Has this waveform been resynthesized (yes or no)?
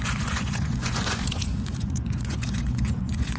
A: yes